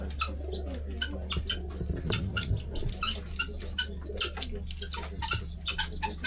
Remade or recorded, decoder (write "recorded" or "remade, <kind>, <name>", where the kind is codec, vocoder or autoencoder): recorded